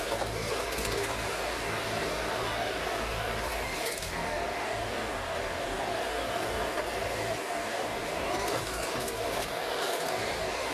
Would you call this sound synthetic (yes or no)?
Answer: yes